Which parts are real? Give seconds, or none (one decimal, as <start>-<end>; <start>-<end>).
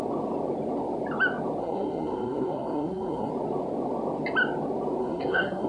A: 0.0-1.6; 3.3-5.0